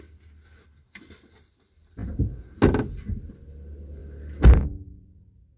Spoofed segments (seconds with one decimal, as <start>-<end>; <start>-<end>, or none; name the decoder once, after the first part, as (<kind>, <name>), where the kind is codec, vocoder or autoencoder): none